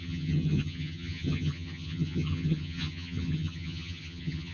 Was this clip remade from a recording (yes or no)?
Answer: yes